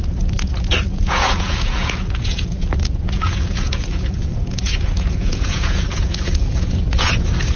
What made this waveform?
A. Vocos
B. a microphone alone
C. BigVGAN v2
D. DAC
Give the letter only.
A